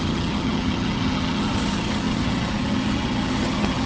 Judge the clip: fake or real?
fake